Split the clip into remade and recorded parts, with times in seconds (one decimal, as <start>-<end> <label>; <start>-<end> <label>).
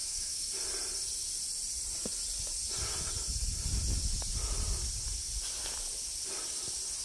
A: 0.0-0.5 remade; 0.5-7.0 recorded